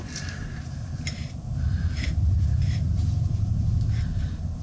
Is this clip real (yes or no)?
no